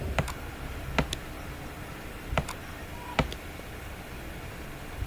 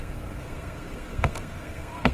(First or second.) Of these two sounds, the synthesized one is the second